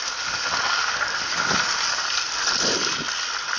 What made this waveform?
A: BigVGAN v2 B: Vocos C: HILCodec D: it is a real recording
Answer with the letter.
D